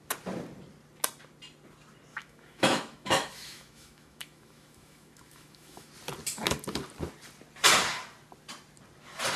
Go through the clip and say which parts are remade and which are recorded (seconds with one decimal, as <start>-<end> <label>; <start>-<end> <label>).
0.0-2.1 recorded; 2.1-5.9 remade; 5.9-9.4 recorded